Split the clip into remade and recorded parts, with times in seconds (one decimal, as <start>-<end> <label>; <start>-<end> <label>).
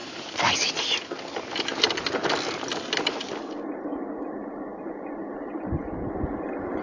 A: 0.0-0.7 remade; 0.7-4.7 recorded; 4.7-5.8 remade; 5.8-6.8 recorded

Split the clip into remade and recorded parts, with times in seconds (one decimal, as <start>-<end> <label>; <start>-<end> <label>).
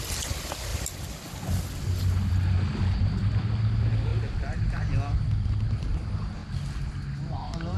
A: 0.0-7.8 recorded